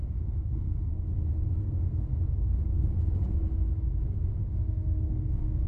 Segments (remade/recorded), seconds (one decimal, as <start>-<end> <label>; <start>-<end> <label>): 0.0-0.9 remade; 0.9-1.6 recorded; 1.6-2.1 remade; 2.1-5.0 recorded; 5.0-5.7 remade